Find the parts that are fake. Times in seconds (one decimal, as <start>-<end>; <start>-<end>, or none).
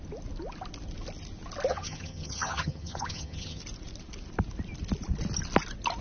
1.7-3.6